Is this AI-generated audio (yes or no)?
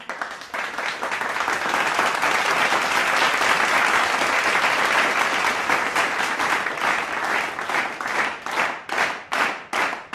no